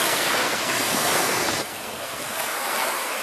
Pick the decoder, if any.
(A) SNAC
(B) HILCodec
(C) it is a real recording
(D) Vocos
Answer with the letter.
A